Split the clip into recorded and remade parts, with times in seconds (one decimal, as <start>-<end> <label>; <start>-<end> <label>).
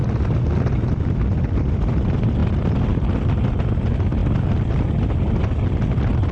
0.0-6.3 recorded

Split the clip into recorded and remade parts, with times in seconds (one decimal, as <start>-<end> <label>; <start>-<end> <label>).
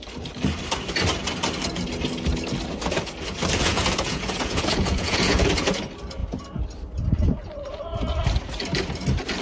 0.0-3.6 recorded; 3.6-5.8 remade; 5.8-9.4 recorded